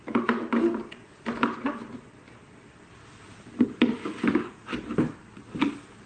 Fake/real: real